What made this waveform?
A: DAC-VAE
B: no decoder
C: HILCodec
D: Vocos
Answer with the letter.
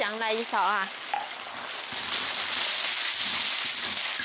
B